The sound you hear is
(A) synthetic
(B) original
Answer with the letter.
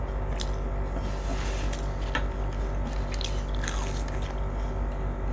B